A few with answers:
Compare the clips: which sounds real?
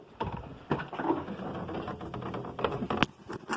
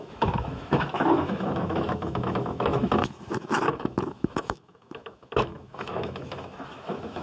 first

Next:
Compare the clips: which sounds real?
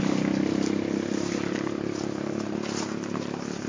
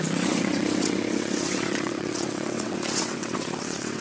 first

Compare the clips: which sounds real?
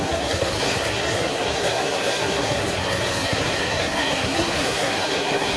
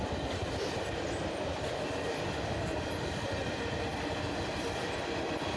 second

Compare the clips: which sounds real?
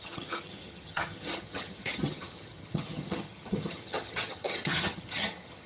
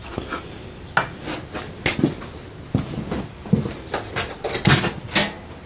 second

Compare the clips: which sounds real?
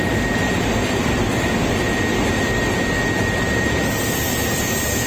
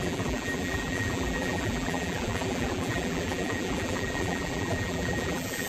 first